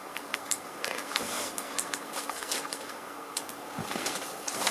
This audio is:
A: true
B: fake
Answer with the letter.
B